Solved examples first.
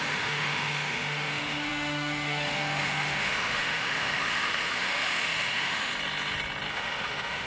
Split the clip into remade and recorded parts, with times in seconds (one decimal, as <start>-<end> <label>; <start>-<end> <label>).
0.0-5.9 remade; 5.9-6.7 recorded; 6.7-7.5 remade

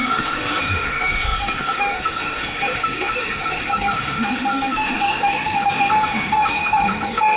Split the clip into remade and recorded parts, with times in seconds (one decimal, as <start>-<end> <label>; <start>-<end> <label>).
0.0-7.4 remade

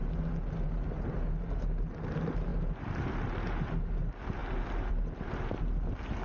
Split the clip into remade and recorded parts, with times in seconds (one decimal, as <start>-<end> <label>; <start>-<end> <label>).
0.0-6.2 recorded

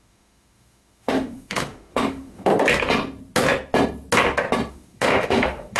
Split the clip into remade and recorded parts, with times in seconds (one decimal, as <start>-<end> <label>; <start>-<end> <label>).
0.0-2.5 remade; 2.5-4.7 recorded; 4.7-5.8 remade

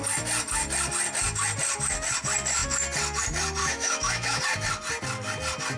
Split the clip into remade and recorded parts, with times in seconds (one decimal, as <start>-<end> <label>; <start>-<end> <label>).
0.0-3.6 recorded; 3.6-4.4 remade; 4.4-5.8 recorded

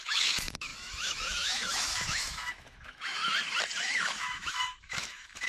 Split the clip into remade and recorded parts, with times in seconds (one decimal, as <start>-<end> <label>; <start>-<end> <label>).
0.0-3.2 remade; 3.2-3.8 recorded; 3.8-5.5 remade